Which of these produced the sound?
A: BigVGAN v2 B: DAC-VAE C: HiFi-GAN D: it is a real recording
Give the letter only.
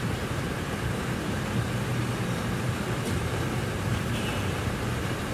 A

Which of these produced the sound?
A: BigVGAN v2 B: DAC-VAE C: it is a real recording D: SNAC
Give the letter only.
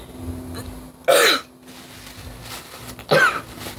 C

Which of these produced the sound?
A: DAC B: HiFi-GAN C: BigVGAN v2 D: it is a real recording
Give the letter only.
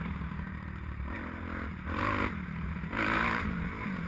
C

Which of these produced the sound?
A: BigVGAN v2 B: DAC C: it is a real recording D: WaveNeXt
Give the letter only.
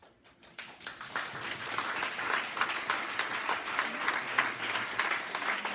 C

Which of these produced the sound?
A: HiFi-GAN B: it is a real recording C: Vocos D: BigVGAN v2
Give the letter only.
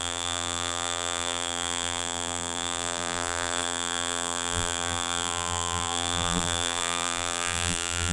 D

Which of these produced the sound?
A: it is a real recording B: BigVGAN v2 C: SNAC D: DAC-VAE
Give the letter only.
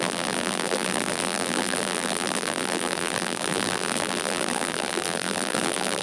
B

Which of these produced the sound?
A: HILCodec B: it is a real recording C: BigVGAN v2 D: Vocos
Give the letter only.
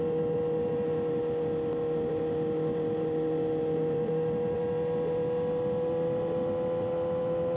B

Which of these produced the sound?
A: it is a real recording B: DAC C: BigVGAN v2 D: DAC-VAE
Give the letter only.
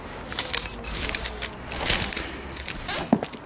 A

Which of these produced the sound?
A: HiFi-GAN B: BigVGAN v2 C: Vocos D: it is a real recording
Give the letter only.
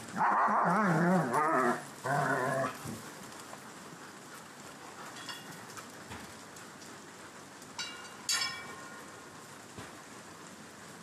D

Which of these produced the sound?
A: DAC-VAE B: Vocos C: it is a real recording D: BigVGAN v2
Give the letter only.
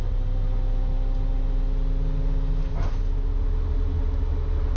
C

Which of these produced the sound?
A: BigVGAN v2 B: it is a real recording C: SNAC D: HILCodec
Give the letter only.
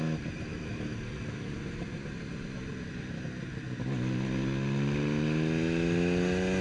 B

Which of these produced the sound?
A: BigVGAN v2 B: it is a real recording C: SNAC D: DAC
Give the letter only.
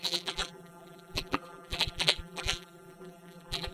A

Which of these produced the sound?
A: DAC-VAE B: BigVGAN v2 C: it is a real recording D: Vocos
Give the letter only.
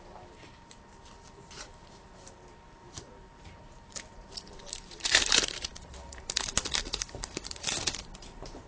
B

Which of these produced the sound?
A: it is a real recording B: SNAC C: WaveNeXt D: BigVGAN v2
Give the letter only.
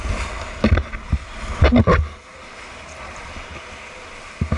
A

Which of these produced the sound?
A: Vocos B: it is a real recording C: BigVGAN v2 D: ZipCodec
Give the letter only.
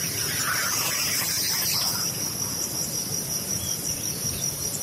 C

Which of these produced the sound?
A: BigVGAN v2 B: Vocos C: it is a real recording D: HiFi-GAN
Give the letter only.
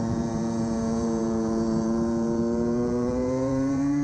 A